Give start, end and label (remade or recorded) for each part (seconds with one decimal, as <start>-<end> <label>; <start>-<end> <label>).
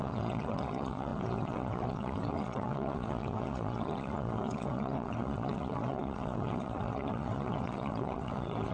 0.0-8.7 remade